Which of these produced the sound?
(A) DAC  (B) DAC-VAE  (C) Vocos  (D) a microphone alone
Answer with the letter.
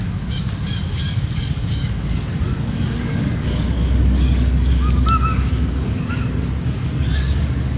A